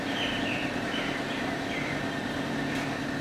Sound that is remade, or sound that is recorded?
recorded